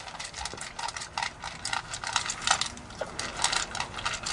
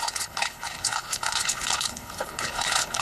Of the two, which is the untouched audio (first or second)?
first